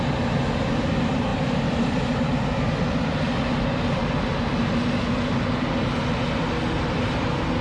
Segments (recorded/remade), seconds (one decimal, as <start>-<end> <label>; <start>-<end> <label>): 0.0-1.3 recorded; 1.3-2.6 remade; 2.6-7.6 recorded